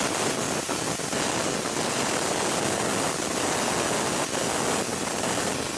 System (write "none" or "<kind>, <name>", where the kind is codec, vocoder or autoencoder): none